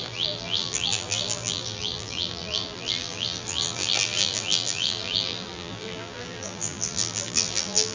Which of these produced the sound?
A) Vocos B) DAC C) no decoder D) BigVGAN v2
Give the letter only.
D